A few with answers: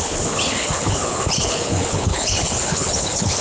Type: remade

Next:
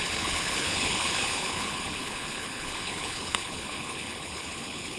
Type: remade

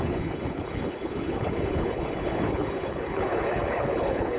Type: remade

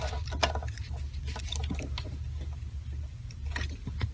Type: recorded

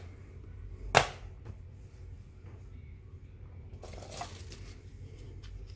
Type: recorded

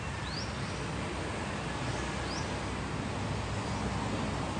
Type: recorded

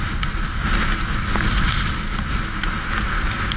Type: recorded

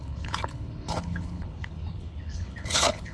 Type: remade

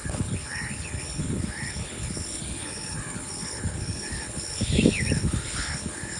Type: remade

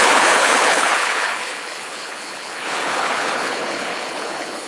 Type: remade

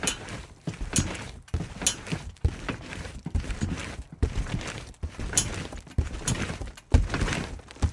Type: recorded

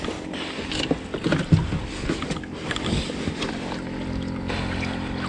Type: recorded